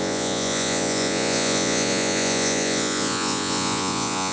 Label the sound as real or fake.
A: fake